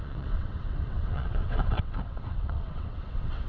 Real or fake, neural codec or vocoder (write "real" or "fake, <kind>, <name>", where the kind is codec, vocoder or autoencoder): fake, vocoder, WaveNeXt